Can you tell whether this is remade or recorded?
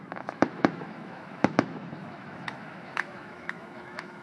remade